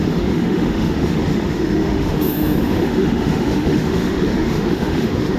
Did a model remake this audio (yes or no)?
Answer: yes